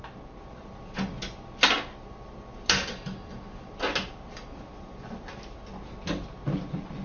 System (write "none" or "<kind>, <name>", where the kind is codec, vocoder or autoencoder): none